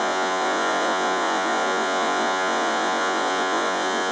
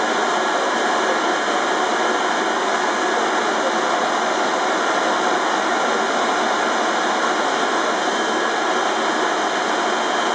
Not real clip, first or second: first